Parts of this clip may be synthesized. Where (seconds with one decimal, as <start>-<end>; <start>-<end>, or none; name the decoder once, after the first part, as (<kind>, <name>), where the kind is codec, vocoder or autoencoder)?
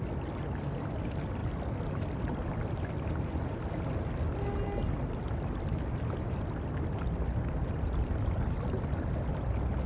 none